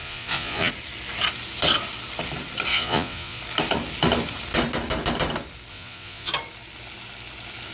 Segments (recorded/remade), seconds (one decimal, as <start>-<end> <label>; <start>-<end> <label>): 0.0-0.7 remade; 0.7-2.7 recorded; 2.7-3.4 remade; 3.4-5.7 recorded; 5.7-6.3 remade; 6.3-7.7 recorded